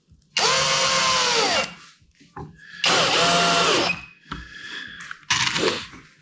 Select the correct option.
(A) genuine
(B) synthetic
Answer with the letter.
A